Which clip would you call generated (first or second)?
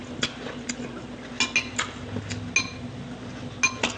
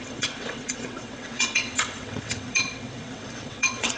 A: second